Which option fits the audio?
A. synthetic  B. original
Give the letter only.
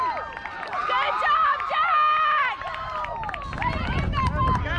B